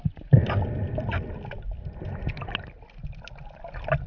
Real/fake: real